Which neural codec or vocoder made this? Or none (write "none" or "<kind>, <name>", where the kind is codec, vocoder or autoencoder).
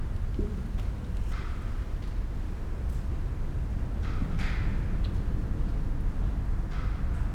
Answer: none